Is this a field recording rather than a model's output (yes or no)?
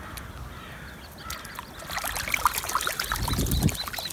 yes